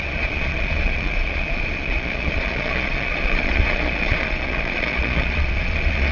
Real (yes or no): no